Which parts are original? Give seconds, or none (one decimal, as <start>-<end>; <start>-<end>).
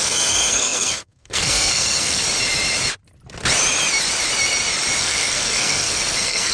2.2-5.0